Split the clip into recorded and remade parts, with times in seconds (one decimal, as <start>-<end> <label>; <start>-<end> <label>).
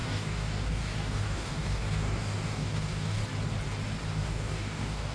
0.0-3.2 remade; 3.2-4.1 recorded; 4.1-5.1 remade